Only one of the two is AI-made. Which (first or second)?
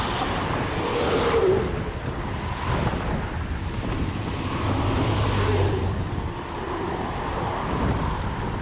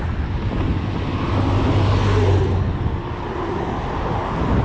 first